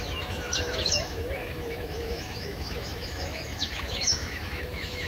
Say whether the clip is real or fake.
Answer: fake